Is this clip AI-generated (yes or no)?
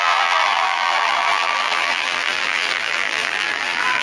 yes